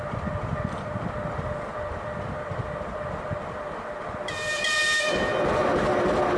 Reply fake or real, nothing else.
real